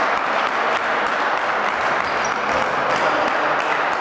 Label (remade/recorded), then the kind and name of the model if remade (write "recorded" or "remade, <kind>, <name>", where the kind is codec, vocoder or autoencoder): recorded